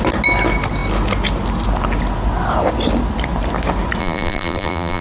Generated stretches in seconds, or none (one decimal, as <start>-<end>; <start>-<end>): 4.0-5.0